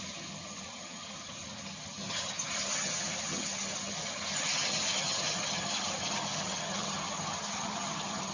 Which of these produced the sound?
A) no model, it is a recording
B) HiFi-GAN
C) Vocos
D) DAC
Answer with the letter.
B